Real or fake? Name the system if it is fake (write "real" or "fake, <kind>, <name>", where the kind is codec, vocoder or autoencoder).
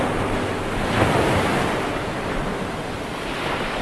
real